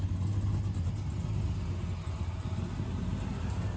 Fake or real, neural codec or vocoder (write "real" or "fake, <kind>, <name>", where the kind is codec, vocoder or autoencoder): real